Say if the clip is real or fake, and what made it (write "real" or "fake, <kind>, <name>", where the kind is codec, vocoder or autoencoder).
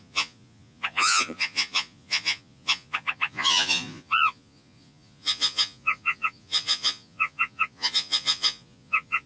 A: fake, vocoder, Vocos